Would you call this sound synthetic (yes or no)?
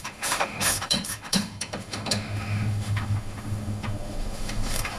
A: yes